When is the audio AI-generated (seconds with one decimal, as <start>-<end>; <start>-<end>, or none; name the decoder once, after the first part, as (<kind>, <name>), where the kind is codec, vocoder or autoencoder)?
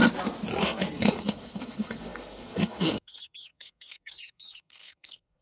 0.6-5.4 (codec, SNAC)